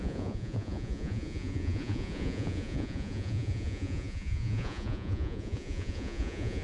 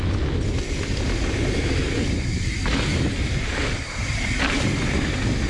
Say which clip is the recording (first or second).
second